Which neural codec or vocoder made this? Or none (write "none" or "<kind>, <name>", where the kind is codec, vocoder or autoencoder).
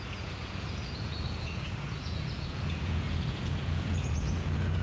vocoder, Vocos